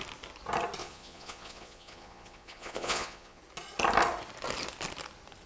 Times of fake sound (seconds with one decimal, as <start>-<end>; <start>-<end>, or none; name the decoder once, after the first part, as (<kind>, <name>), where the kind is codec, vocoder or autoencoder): 0.8-3.4 (vocoder, Vocos)